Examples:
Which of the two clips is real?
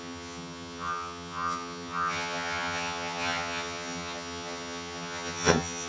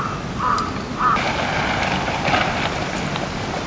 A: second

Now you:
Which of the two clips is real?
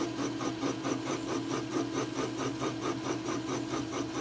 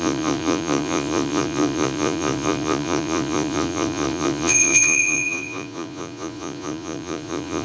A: first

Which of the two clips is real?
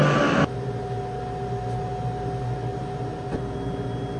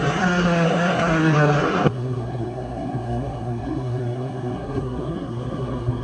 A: first